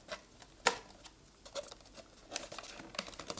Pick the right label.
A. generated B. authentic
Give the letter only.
B